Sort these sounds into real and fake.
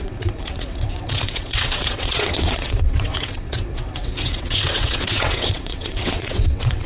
fake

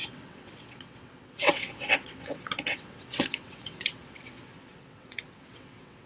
fake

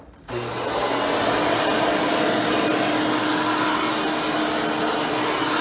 real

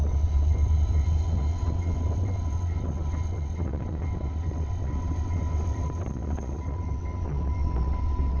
fake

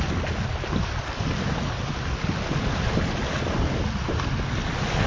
real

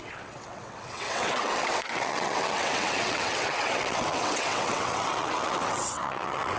fake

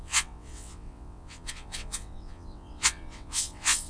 fake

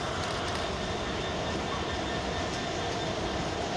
real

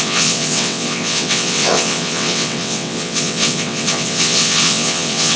fake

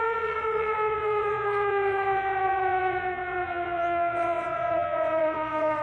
fake